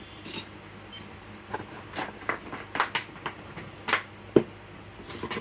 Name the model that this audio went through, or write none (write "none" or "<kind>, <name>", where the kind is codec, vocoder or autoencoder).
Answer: none